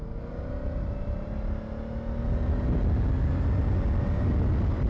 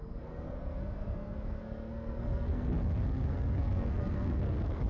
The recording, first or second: first